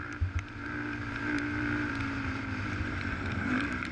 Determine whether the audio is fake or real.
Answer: fake